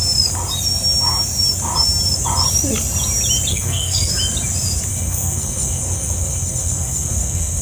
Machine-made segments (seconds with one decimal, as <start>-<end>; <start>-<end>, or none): 3.5-4.1; 4.9-7.6

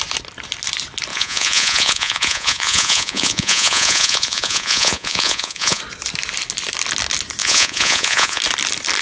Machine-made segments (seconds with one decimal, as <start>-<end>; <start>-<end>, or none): 1.1-5.8; 7.4-8.4